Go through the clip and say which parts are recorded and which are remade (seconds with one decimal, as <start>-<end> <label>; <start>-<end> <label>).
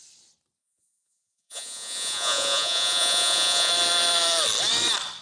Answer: 0.0-0.6 recorded; 0.6-3.7 remade; 3.7-5.2 recorded